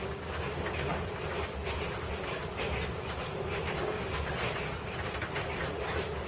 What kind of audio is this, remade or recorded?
recorded